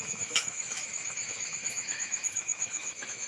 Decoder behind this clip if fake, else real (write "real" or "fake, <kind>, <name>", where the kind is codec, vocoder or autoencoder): fake, autoencoder, DAC-VAE